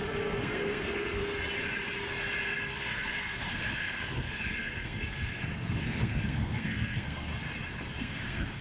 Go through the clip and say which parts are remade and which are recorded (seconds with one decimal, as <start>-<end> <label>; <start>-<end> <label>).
0.0-1.2 remade; 1.2-2.6 recorded; 2.6-7.3 remade; 7.3-8.0 recorded; 8.0-8.6 remade